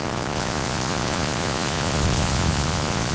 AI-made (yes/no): yes